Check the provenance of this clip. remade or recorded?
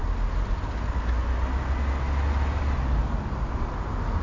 recorded